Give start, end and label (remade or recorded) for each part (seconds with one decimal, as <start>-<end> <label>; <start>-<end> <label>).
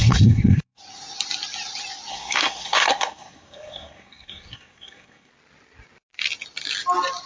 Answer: 0.0-0.8 remade; 0.8-2.1 recorded; 2.1-5.3 remade; 5.3-7.3 recorded